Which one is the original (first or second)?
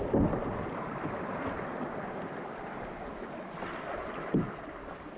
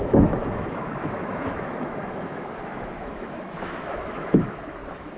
first